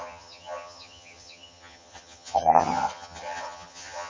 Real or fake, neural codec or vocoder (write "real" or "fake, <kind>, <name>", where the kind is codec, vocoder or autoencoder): fake, vocoder, HiFi-GAN